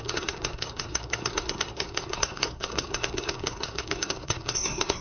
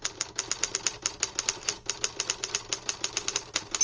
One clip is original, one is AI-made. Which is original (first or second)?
second